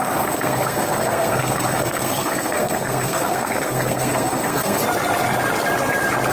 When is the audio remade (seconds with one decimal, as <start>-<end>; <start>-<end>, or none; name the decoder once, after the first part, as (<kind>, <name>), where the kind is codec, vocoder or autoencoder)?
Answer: 0.0-4.8 (codec, SNAC)